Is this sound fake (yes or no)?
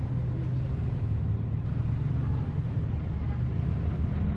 no